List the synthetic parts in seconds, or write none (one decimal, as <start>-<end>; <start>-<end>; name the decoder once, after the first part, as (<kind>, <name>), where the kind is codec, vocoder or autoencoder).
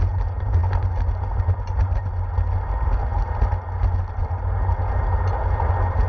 none